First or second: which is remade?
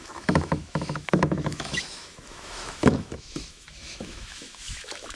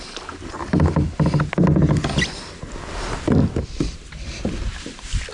first